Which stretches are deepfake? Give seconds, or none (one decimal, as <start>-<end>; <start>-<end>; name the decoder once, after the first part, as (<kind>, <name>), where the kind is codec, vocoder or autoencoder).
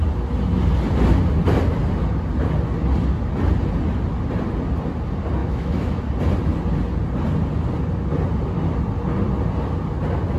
5.4-6.0 (autoencoder, DAC-VAE)